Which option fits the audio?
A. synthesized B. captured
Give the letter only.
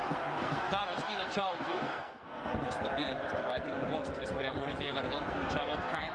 A